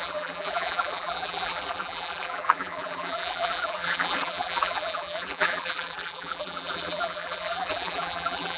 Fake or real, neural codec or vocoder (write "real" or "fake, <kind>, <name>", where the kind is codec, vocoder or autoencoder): fake, vocoder, BigVGAN v2